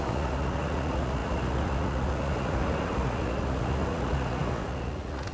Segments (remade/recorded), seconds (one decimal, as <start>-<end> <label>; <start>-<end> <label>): 0.0-5.3 remade